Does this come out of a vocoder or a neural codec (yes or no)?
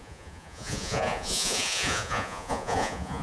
yes